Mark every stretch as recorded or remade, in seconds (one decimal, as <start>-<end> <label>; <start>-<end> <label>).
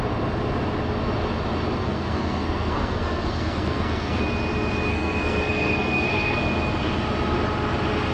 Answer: 0.0-1.8 recorded; 1.8-4.2 remade; 4.2-4.9 recorded; 4.9-6.6 remade; 6.6-8.1 recorded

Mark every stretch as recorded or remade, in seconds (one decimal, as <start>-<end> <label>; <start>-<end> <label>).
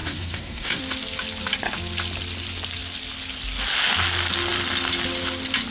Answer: 0.0-0.8 remade; 0.8-5.7 recorded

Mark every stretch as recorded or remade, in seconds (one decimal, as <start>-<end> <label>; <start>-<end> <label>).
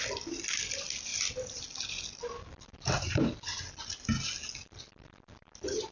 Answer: 0.0-5.9 recorded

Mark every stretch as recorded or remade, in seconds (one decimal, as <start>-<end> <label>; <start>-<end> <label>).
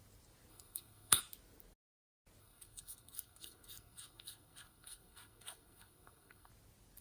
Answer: 0.0-0.5 recorded; 0.5-1.2 remade; 1.2-2.4 recorded; 2.4-6.5 remade; 6.5-7.0 recorded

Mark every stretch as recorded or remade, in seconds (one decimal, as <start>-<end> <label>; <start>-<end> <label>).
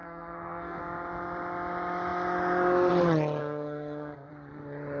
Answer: 0.0-0.8 remade; 0.8-3.4 recorded; 3.4-4.3 remade; 4.3-5.0 recorded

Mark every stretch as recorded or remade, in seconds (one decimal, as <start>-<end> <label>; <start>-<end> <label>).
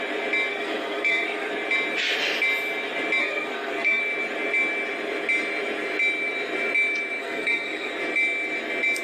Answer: 0.0-0.5 recorded; 0.5-1.5 remade; 1.5-3.2 recorded; 3.2-4.0 remade; 4.0-7.2 recorded; 7.2-7.9 remade; 7.9-9.0 recorded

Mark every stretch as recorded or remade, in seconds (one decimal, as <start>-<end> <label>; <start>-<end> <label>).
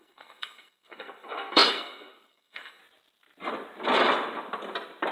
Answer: 0.0-2.8 remade; 2.8-5.1 recorded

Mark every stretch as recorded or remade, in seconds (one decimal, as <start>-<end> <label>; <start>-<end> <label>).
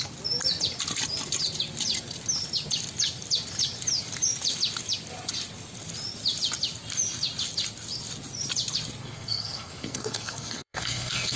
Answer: 0.0-9.0 recorded; 9.0-11.4 remade